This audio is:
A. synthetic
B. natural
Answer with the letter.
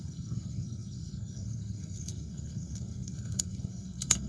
A